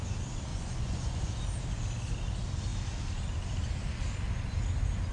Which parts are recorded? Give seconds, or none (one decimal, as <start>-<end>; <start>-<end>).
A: 0.0-0.5; 1.4-5.1